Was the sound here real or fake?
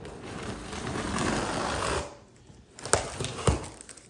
real